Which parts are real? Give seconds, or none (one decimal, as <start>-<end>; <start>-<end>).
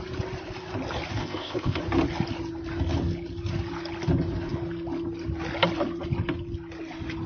0.0-1.2; 1.8-7.3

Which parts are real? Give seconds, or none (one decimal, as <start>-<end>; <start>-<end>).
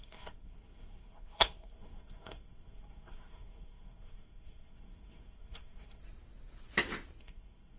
6.0-7.2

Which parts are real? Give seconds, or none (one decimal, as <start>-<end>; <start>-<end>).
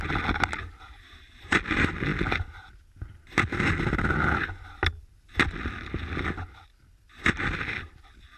0.0-8.4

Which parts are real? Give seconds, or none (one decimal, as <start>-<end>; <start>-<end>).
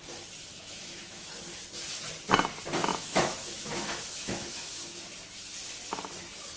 0.0-0.5; 1.3-2.9; 5.0-6.6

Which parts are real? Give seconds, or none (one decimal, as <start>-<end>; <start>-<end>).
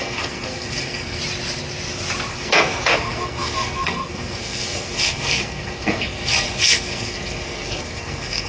1.2-2.3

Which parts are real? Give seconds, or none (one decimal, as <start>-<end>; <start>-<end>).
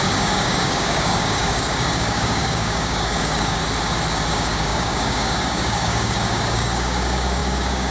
3.6-4.3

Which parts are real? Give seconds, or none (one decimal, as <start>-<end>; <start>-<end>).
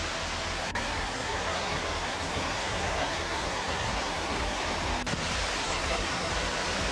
0.0-0.5; 4.6-5.6; 6.3-6.9